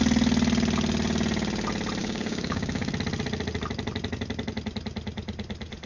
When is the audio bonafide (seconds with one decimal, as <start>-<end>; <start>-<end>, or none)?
0.0-2.0; 2.9-5.9